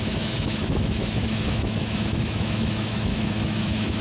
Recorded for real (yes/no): no